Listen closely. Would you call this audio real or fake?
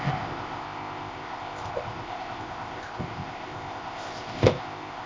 fake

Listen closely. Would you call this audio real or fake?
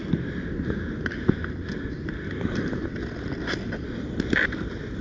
real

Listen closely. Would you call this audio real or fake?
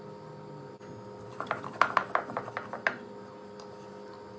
real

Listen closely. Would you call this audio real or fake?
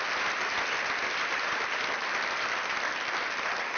real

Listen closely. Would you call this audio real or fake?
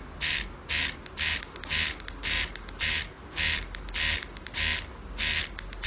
real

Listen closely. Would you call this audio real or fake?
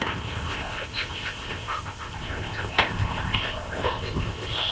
fake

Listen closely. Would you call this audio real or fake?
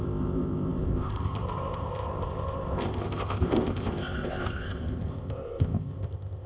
fake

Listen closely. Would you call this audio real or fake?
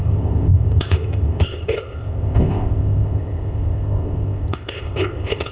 fake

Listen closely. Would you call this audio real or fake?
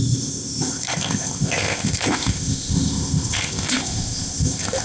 fake